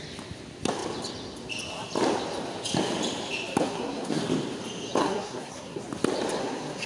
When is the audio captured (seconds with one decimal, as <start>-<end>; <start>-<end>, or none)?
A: 0.0-3.6; 4.2-5.0; 5.8-6.4